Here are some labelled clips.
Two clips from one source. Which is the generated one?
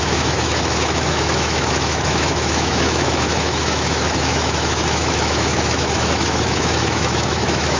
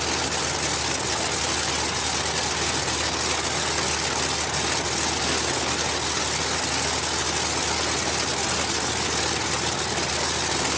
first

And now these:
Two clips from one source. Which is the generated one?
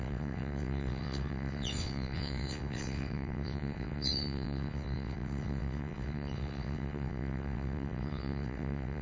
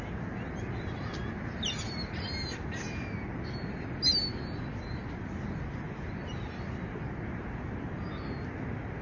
first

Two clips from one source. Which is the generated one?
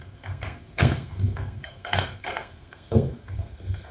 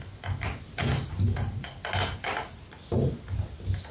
first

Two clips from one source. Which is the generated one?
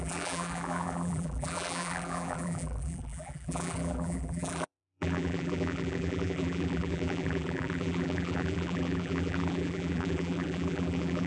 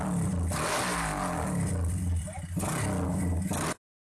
first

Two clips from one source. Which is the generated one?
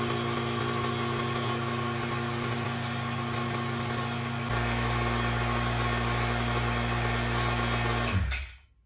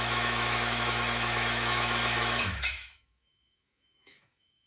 second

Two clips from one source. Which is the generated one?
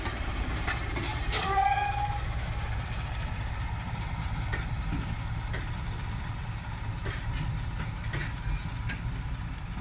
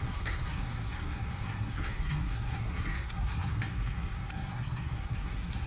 second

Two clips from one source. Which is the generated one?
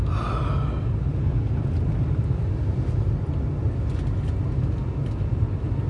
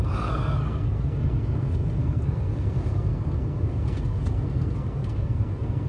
second